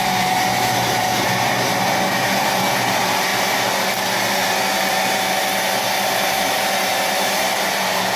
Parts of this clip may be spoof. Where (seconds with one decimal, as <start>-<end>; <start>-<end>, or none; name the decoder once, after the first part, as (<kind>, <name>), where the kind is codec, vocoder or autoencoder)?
0.0-3.3 (vocoder, BigVGAN v2); 6.0-8.2